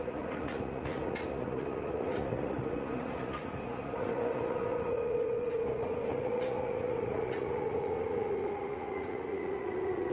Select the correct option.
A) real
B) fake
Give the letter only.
B